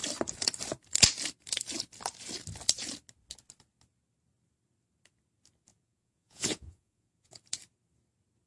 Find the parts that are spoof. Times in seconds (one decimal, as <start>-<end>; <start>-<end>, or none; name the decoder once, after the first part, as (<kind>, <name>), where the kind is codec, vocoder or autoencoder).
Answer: 5.7-7.3 (vocoder, Vocos)

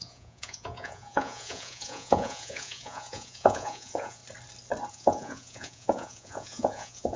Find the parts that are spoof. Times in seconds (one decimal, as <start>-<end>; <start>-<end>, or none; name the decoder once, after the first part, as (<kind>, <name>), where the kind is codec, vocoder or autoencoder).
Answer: 0.0-4.2 (vocoder, Vocos); 4.9-7.2

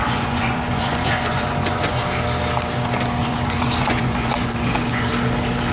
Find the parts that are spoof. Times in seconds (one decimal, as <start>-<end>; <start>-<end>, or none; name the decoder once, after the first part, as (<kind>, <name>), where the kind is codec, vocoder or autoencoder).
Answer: 0.0-2.0 (vocoder, Vocos); 3.2-5.1

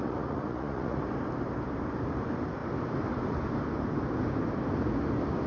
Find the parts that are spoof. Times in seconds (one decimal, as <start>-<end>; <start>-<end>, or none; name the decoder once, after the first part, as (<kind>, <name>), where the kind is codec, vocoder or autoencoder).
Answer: 0.0-1.0 (vocoder, Vocos)

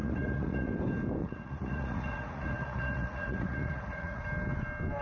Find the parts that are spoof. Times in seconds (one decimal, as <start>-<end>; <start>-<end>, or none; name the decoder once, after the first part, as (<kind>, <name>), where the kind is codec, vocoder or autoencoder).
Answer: 0.0-0.7 (vocoder, Vocos); 1.2-4.2